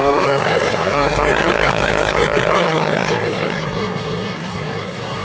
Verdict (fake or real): fake